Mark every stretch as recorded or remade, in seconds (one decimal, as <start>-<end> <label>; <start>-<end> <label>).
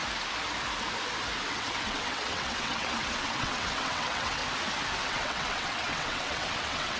0.0-1.5 recorded; 1.5-4.4 remade; 4.4-5.0 recorded; 5.0-7.0 remade